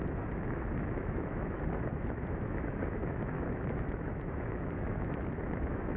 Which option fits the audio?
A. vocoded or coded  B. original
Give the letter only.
A